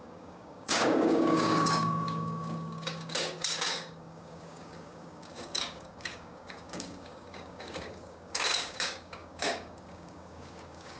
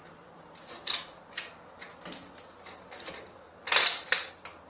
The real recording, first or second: second